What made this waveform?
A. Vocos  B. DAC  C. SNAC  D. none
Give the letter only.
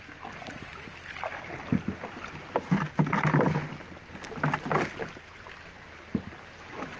D